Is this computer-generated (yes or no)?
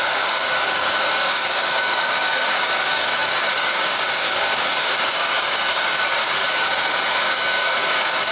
yes